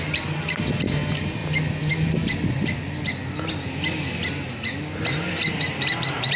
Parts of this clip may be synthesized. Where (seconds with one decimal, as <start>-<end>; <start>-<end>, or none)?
none